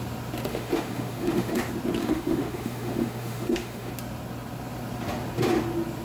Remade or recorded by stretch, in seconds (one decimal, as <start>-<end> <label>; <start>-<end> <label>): 0.0-0.5 recorded; 0.5-1.6 remade; 1.6-2.0 recorded; 2.0-3.9 remade; 3.9-6.0 recorded